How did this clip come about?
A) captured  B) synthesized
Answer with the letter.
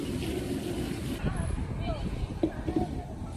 A